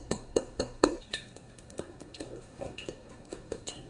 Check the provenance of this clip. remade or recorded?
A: remade